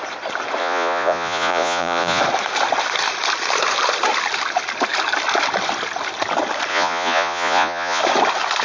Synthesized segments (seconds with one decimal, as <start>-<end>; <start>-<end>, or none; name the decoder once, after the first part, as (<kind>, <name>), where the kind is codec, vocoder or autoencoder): 0.6-2.2 (vocoder, Vocos); 6.7-8.0

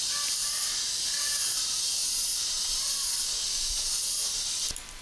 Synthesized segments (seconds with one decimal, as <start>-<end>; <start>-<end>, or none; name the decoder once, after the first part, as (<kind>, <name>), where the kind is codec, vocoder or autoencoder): none

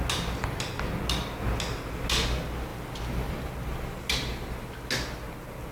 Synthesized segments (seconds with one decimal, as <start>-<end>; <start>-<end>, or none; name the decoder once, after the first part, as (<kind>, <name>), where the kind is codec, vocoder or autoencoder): 2.7-3.3 (vocoder, BigVGAN v2)

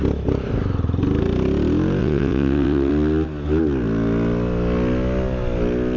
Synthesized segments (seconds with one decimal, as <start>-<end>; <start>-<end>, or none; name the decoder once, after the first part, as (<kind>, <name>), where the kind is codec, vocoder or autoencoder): 2.0-2.9 (vocoder, WaveNeXt)

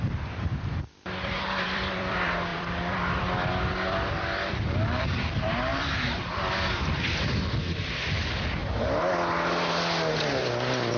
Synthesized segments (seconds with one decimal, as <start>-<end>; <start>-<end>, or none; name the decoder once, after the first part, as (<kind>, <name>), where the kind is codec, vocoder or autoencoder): 0.0-8.6 (vocoder, BigVGAN v2)

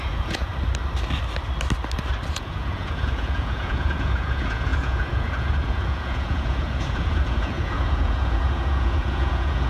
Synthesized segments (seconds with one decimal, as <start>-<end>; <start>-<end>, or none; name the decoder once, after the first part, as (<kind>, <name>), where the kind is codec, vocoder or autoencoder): 0.0-0.5 (vocoder, Vocos); 2.3-9.7